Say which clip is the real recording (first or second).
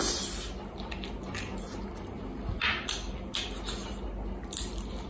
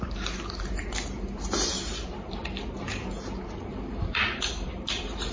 first